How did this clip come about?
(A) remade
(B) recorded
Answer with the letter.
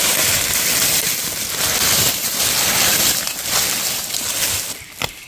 B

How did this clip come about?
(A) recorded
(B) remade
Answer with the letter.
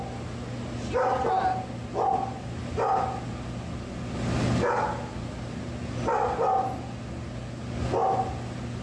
A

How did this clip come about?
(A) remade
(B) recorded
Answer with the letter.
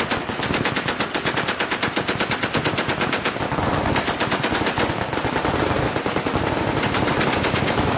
B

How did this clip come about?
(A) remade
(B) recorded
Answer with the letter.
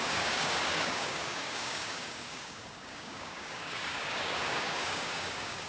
A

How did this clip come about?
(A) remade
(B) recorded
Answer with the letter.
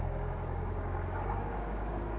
A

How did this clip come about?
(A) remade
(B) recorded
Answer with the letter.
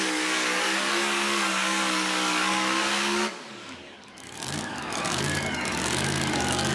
A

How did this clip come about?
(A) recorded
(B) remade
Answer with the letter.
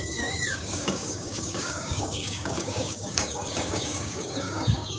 B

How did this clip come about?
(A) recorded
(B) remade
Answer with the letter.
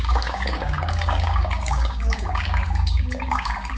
B